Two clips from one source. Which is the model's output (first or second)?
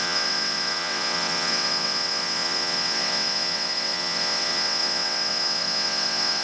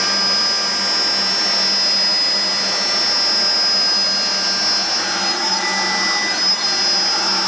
first